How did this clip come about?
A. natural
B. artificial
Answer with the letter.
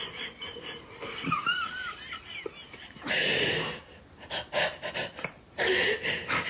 A